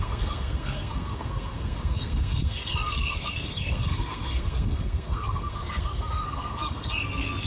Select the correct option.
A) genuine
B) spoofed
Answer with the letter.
B